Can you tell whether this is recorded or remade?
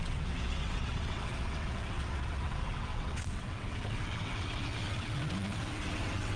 remade